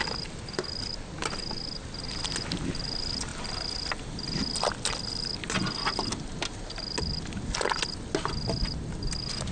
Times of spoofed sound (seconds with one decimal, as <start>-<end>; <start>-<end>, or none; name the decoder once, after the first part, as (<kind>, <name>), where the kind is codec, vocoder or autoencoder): none